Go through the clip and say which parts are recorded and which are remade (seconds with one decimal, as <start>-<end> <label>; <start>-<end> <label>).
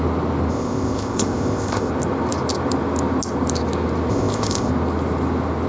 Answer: 0.0-0.5 recorded; 0.5-1.9 remade; 1.9-4.1 recorded; 4.1-4.7 remade; 4.7-5.7 recorded